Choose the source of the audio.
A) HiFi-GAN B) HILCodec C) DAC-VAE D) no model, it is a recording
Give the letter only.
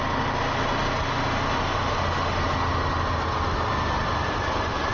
D